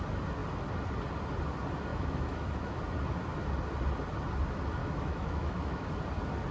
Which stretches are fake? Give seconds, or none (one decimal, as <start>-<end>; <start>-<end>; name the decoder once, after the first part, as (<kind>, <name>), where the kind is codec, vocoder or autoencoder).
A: 1.9-2.8 (autoencoder, DAC-VAE); 4.8-6.0